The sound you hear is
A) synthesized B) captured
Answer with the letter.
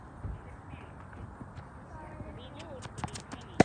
B